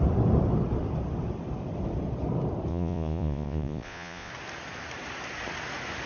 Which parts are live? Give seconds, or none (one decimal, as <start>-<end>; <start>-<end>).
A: 0.0-2.7; 4.3-6.1